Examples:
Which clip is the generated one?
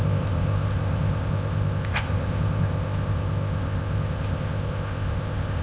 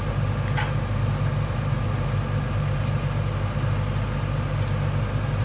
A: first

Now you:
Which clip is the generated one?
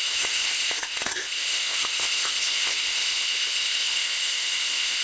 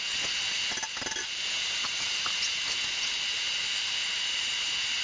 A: first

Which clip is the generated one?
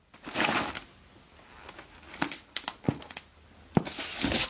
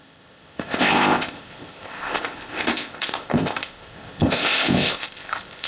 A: second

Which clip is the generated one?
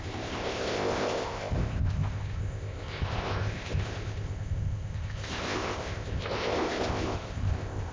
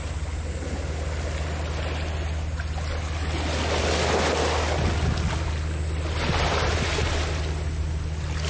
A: first